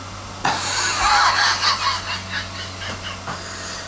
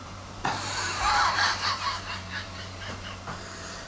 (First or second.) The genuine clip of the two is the first